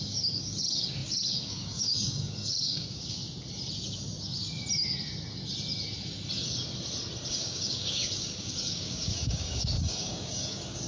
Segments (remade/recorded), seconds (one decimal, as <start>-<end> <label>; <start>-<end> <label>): 0.0-3.2 remade; 3.2-7.3 recorded; 7.3-10.9 remade